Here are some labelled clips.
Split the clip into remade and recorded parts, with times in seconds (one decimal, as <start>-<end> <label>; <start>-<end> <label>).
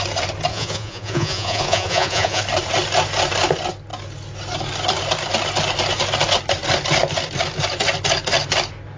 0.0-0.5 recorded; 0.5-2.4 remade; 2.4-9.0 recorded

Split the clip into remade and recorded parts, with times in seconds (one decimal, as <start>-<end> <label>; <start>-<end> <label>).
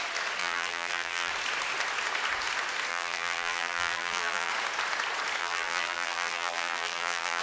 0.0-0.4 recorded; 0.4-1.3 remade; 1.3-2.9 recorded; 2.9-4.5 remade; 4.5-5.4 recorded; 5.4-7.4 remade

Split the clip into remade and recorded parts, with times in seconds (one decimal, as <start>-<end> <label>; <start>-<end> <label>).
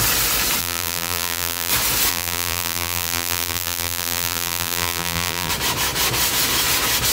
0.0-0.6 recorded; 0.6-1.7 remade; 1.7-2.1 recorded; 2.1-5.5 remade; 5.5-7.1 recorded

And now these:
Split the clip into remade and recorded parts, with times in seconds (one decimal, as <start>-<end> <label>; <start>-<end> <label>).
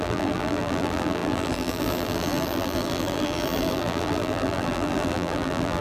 0.0-5.8 remade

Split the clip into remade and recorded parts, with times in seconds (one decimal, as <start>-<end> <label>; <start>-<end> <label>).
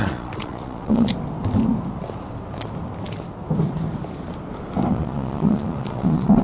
0.0-1.1 remade; 1.1-4.9 recorded; 4.9-6.4 remade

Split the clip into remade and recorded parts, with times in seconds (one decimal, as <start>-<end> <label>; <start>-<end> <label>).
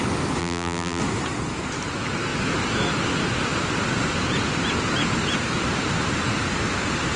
0.0-0.4 recorded; 0.4-1.0 remade; 1.0-7.2 recorded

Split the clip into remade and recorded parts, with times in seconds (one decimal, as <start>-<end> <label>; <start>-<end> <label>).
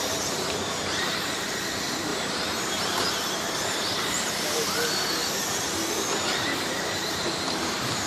0.0-2.1 recorded; 2.1-4.6 remade; 4.6-5.6 recorded; 5.6-8.1 remade